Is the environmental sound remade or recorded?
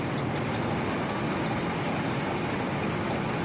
recorded